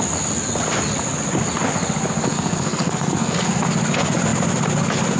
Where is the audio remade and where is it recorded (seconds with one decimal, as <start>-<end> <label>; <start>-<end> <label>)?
0.0-2.2 recorded; 2.2-3.6 remade; 3.6-5.2 recorded

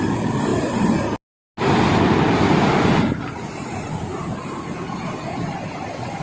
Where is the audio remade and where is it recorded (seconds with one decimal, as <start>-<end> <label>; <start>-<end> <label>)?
0.0-6.2 recorded

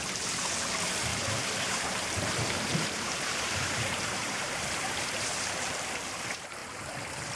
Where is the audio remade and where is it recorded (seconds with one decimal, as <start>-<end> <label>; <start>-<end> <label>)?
0.0-1.1 recorded; 1.1-5.5 remade; 5.5-7.4 recorded

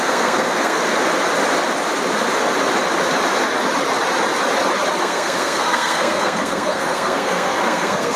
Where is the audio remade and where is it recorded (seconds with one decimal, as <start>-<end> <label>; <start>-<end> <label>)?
0.0-0.8 remade; 0.8-5.0 recorded; 5.0-8.2 remade

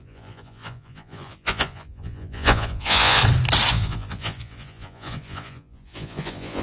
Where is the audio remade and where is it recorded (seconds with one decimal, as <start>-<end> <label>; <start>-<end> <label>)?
0.0-3.2 remade; 3.2-3.7 recorded; 3.7-6.6 remade